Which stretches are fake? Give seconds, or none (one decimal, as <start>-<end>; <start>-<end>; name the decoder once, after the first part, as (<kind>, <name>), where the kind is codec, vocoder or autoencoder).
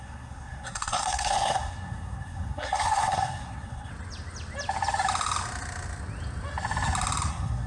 0.0-3.9 (codec, SNAC); 7.3-7.7